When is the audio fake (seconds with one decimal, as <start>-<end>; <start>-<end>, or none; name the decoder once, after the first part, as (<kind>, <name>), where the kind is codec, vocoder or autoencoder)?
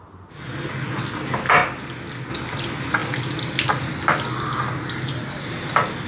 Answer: none